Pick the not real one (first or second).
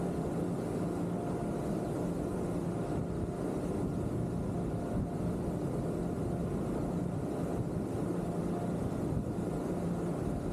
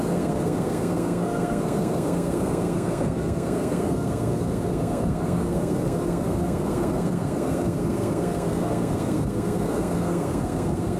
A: second